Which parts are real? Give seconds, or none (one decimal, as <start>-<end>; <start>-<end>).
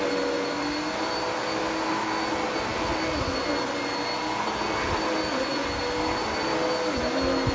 0.0-7.5